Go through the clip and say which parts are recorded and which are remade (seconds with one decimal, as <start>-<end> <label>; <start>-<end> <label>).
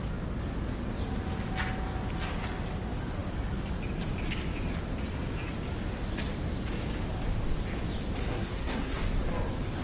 0.0-8.2 recorded; 8.2-9.0 remade; 9.0-9.8 recorded